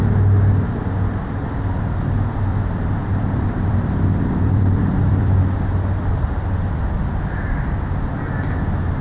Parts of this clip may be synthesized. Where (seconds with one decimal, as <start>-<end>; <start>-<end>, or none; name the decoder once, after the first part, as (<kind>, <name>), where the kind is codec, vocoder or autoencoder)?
2.5-5.4 (vocoder, BigVGAN v2)